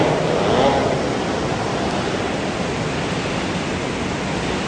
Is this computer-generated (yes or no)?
no